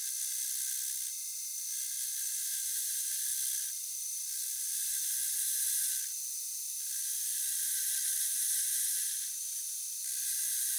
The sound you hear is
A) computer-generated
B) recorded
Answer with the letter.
B